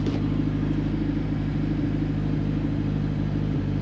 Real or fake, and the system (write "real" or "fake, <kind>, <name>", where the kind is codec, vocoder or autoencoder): real